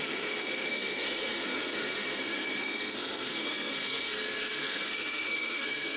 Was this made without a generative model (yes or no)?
no